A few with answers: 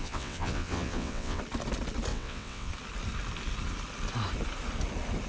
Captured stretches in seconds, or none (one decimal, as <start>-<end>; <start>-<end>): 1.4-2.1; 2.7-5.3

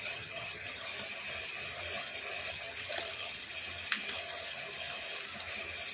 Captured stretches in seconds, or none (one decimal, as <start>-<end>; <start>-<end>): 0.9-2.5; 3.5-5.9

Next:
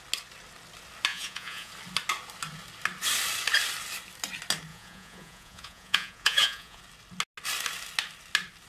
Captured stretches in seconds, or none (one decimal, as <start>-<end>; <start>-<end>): 0.0-1.1; 1.7-4.7; 6.8-8.7

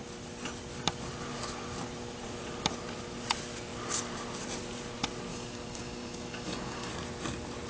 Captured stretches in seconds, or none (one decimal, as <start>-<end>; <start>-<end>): 0.0-5.3; 6.9-7.7

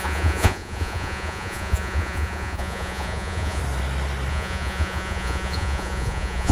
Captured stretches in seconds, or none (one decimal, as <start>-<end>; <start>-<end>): 3.6-4.3